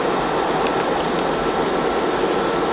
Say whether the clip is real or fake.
real